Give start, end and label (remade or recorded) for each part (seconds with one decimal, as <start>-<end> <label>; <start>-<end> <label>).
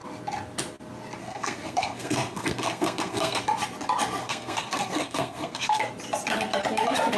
0.0-1.2 recorded; 1.2-3.4 remade; 3.4-4.2 recorded; 4.2-5.9 remade; 5.9-7.2 recorded